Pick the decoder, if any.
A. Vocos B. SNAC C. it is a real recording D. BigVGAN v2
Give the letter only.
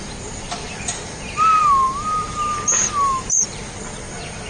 C